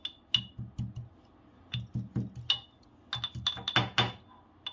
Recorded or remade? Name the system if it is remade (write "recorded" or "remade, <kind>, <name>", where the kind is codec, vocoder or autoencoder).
recorded